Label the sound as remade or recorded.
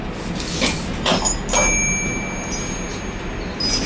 recorded